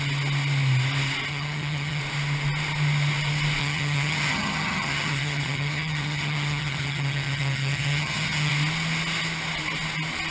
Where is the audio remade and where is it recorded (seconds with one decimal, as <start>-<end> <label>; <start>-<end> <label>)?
0.0-1.3 recorded; 1.3-2.0 remade; 2.0-3.6 recorded; 3.6-8.5 remade; 8.5-10.3 recorded